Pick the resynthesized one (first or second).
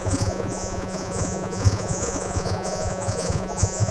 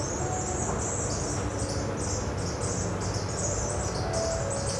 first